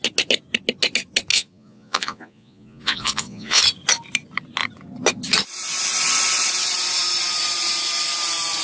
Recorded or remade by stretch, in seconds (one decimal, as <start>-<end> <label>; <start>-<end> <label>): 0.0-1.3 recorded; 1.3-3.6 remade; 3.6-8.6 recorded